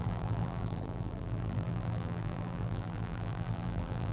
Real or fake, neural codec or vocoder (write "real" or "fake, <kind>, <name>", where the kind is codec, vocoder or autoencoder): fake, vocoder, BigVGAN v2